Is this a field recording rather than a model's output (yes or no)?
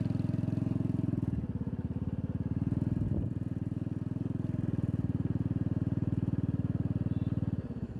yes